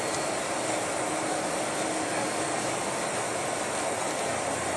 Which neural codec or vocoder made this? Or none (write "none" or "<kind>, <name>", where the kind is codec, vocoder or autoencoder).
none